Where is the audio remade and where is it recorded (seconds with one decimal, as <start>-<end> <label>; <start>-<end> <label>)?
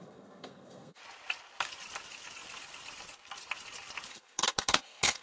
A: 0.0-1.0 remade; 1.0-4.1 recorded; 4.1-5.2 remade